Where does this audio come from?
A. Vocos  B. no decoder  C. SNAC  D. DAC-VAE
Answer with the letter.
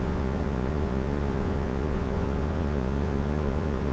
A